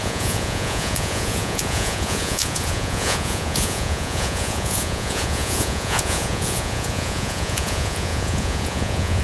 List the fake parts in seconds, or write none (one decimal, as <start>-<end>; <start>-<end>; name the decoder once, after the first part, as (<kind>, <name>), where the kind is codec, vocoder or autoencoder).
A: 0.0-9.2 (vocoder, Vocos)